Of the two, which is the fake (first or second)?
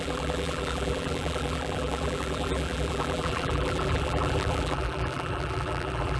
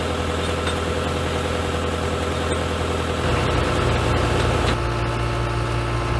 first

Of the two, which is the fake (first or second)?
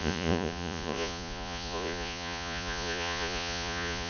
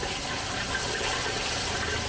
first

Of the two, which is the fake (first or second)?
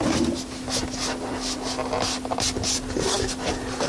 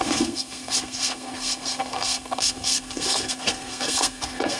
second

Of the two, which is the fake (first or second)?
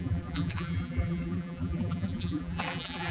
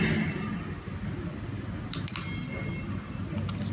first